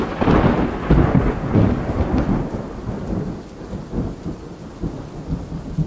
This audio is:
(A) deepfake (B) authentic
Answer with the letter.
B